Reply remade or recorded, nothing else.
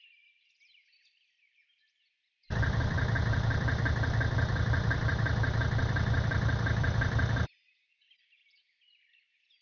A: remade